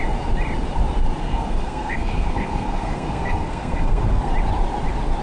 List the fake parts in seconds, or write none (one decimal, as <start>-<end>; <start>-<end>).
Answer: 1.2-4.3